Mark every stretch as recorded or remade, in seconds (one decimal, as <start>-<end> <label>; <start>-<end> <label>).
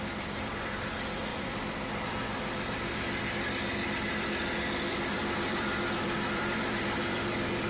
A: 0.0-1.3 recorded; 1.3-2.0 remade; 2.0-4.9 recorded; 4.9-7.7 remade